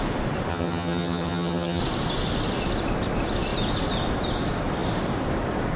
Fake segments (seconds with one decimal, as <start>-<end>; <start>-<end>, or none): 0.5-1.8